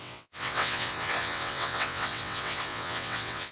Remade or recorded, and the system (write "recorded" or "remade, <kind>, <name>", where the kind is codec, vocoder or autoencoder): remade, vocoder, WaveNeXt